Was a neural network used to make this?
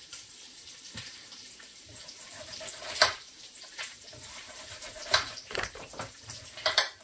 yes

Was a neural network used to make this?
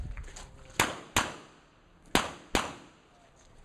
no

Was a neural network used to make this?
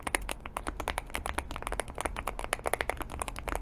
no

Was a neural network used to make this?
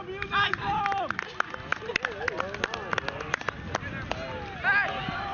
no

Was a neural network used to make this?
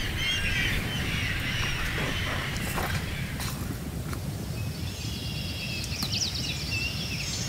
no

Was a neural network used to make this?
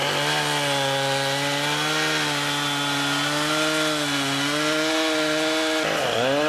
no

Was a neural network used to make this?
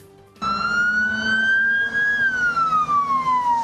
no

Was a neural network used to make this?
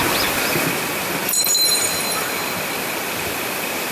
no